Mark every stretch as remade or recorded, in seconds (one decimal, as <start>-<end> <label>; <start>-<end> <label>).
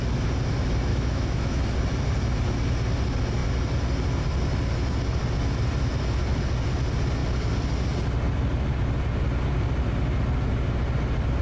0.0-0.9 recorded; 0.9-1.6 remade; 1.6-11.4 recorded